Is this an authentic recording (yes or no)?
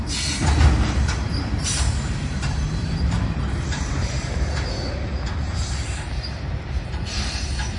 no